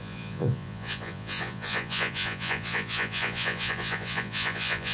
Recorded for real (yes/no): no